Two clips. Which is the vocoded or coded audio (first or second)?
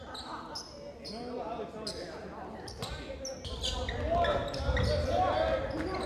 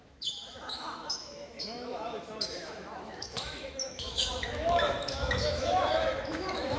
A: second